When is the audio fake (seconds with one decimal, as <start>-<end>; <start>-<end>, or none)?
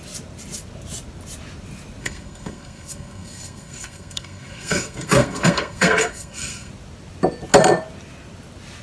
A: 2.0-6.7